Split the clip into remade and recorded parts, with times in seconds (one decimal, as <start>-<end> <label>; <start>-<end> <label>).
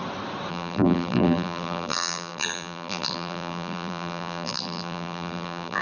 0.0-0.5 recorded; 0.5-5.8 remade